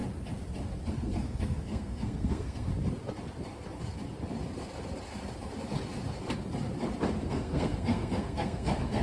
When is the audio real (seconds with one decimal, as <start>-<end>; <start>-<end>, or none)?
0.0-0.9; 2.7-7.3